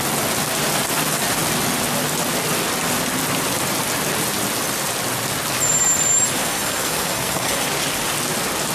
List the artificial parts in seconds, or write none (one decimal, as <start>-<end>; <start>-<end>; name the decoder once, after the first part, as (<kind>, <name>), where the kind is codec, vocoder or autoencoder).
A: 6.4-7.6 (codec, SNAC)